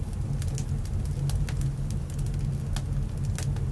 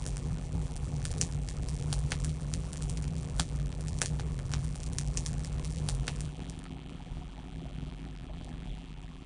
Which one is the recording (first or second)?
first